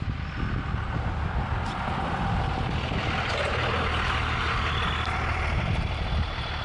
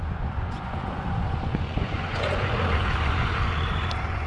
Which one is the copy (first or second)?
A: second